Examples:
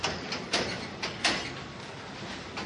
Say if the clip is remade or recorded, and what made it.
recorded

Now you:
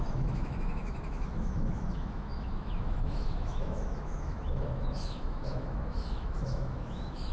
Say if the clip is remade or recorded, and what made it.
remade, autoencoder, DAC-VAE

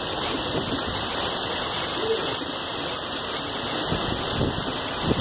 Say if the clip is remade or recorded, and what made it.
recorded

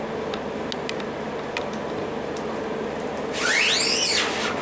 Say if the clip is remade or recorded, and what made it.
recorded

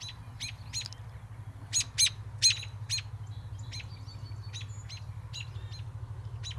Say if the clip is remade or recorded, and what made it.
recorded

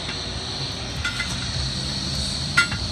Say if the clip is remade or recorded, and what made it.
recorded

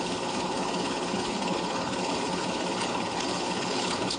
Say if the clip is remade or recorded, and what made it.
remade, codec, HILCodec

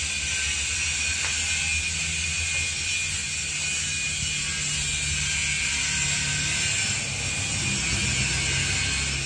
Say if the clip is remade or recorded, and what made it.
recorded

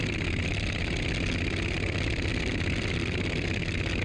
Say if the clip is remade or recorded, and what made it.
remade, vocoder, BigVGAN v2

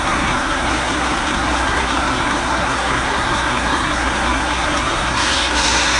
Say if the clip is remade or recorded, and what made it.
remade, codec, SNAC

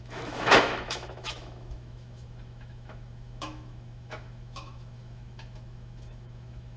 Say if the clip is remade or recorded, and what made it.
remade, autoencoder, DAC-VAE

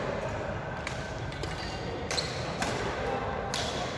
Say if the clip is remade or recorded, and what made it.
recorded